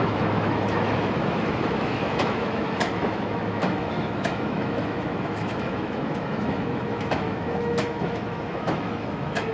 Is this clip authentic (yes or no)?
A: no